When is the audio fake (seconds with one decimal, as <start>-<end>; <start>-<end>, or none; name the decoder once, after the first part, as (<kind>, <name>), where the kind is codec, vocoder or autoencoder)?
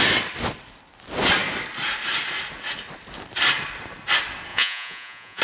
4.5-5.4 (vocoder, Vocos)